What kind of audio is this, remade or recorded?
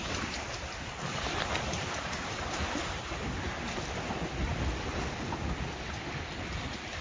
recorded